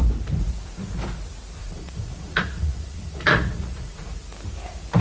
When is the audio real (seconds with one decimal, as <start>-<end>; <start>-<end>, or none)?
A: 0.0-1.6; 4.2-5.0